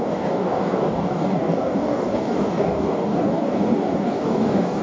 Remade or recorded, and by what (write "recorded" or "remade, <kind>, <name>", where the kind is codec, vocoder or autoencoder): remade, codec, DAC